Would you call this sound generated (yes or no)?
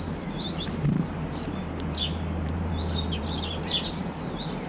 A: yes